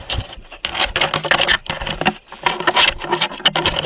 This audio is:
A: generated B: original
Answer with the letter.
B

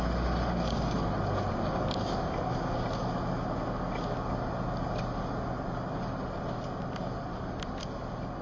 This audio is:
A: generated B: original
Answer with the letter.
B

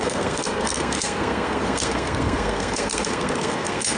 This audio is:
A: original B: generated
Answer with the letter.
B